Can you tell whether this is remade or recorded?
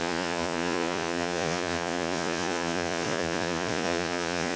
remade